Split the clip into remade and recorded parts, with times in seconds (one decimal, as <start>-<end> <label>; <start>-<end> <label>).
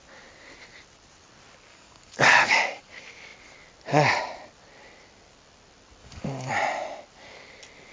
0.0-1.7 recorded; 1.7-2.8 remade; 2.8-6.0 recorded; 6.0-6.5 remade; 6.5-7.9 recorded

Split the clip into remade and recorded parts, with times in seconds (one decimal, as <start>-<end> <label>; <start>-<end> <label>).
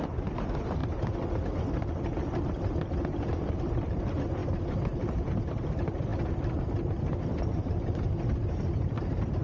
0.0-9.4 recorded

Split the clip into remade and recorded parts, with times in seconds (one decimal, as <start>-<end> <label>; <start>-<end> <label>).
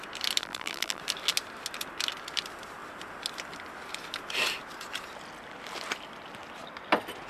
0.0-0.4 recorded; 0.4-1.0 remade; 1.0-7.3 recorded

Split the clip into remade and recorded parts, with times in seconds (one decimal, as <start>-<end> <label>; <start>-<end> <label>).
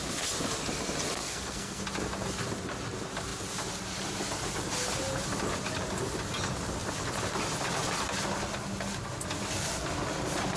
0.0-1.2 recorded; 1.2-1.8 remade; 1.8-10.6 recorded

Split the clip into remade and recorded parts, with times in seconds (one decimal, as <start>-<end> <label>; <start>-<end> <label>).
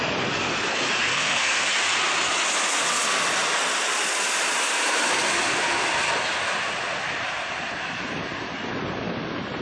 0.0-1.1 recorded; 1.1-1.7 remade; 1.7-9.6 recorded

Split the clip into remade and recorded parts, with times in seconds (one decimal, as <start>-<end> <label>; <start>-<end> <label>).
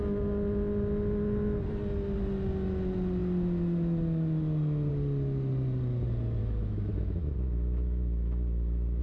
0.0-6.4 recorded; 6.4-9.0 remade